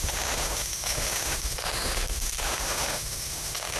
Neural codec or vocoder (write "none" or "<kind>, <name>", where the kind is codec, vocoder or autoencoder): autoencoder, DAC-VAE